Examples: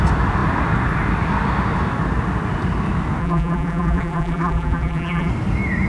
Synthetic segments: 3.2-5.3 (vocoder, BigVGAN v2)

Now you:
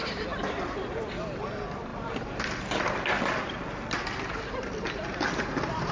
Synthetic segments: none

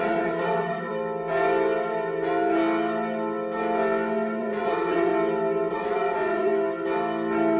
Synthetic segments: 0.0-0.9 (vocoder, Vocos); 4.4-5.1; 5.7-6.5

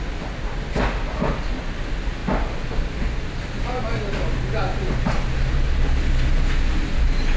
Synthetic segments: none

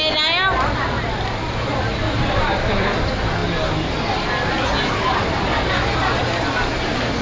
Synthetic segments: none

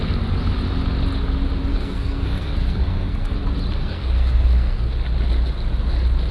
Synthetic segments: 1.7-3.4 (codec, SNAC); 3.8-4.9